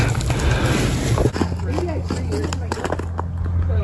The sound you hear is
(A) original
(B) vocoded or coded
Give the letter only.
A